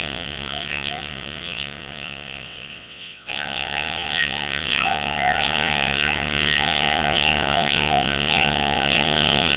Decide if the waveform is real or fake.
fake